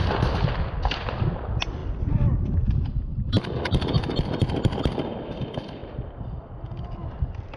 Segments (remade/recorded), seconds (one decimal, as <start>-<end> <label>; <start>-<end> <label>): 0.0-7.6 recorded